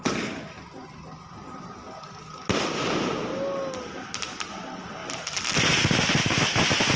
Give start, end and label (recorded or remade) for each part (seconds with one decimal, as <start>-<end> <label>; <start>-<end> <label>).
0.0-7.0 recorded